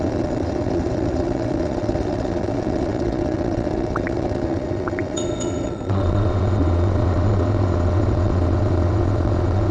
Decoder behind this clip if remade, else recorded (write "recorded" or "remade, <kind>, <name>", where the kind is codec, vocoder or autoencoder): remade, vocoder, WaveNeXt